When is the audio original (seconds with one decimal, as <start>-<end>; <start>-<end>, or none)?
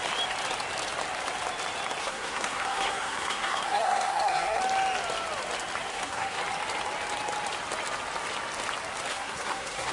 0.0-2.0; 4.6-5.9; 6.4-9.1